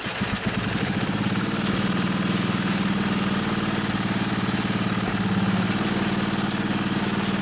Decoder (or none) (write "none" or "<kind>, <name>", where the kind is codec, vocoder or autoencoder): none